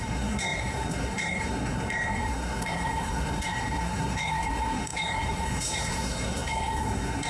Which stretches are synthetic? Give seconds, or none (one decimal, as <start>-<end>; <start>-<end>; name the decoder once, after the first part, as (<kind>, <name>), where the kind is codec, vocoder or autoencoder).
0.0-7.3 (codec, SNAC)

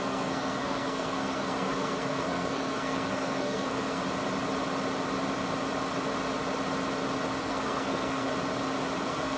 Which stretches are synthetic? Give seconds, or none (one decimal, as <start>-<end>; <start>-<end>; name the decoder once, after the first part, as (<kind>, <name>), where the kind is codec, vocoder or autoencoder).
0.0-4.0 (codec, SNAC); 7.4-8.3; 9.0-9.4

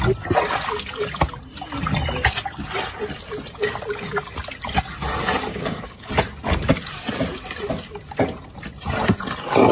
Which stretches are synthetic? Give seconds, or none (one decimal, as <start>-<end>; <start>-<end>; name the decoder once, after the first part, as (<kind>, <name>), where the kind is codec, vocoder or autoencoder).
5.5-6.1 (codec, DAC)

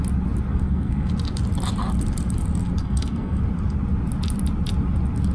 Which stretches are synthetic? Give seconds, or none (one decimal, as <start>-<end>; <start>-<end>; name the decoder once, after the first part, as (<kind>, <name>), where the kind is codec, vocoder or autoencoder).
0.5-1.1 (codec, SNAC); 2.8-3.4

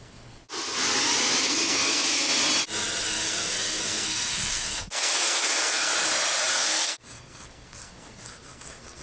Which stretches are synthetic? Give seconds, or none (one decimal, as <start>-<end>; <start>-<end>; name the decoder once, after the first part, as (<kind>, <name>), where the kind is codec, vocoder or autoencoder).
0.0-0.4 (codec, SNAC); 1.4-2.3; 3.0-5.9; 6.5-9.0

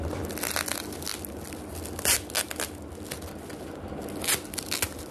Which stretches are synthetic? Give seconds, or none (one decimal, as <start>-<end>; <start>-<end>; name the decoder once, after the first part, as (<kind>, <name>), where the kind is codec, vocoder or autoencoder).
none

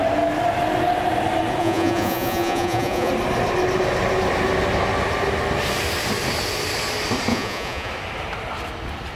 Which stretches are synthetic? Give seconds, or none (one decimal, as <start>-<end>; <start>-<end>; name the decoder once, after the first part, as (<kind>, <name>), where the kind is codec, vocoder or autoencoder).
1.6-3.1 (vocoder, Vocos); 7.3-7.9